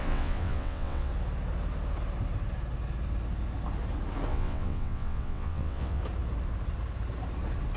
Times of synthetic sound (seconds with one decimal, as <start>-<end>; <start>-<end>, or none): 0.0-1.1; 4.3-6.0